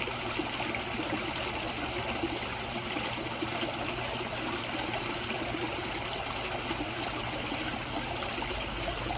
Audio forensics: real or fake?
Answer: real